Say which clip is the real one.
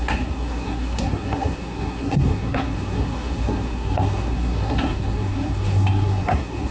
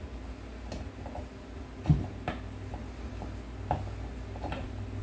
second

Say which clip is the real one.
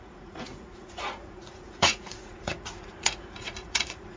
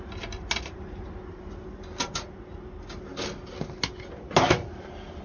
second